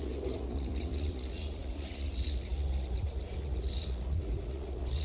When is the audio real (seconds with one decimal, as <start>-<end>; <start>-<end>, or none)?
none